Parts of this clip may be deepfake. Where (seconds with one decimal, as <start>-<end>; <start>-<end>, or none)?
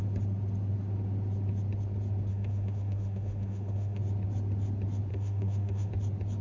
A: 2.3-4.0; 5.1-5.9